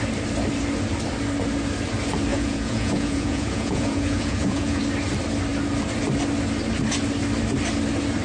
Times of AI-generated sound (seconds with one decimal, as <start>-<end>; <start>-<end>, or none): 2.3-4.8